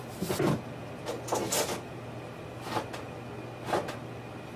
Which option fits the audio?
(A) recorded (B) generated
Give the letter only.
A